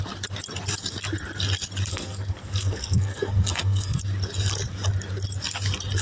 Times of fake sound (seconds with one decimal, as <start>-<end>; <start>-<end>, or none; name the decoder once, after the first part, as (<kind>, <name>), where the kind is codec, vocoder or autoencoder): 1.9-4.0 (codec, SNAC)